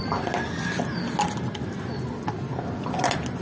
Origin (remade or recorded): recorded